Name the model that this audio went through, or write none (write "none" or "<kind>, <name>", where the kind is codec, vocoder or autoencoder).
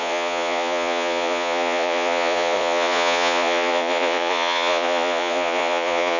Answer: vocoder, Vocos